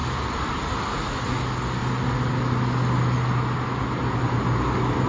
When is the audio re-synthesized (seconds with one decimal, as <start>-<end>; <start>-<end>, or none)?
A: 0.9-1.4